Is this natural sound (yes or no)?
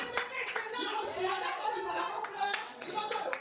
no